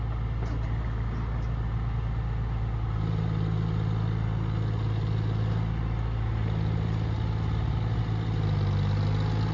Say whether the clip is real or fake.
real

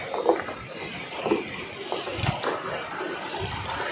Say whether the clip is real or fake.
real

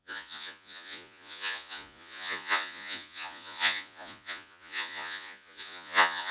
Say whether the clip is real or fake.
fake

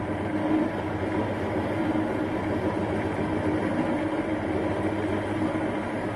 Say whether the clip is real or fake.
real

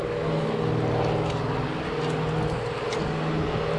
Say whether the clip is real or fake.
real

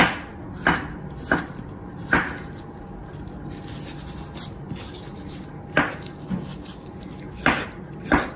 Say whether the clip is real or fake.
real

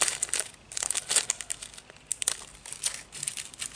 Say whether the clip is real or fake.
real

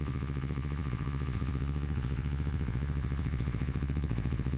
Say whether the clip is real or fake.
fake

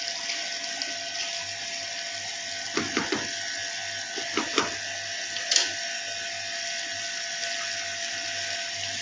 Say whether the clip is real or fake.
real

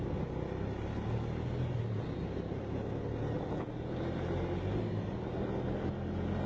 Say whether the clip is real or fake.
real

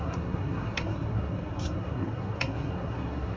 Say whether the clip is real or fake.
fake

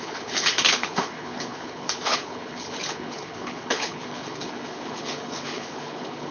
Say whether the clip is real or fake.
fake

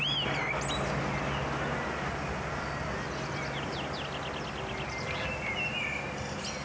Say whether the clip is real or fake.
real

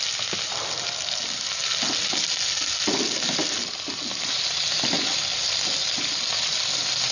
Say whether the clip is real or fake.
real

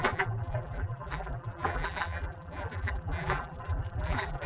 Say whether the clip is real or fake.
fake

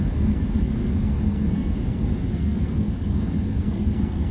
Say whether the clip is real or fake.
fake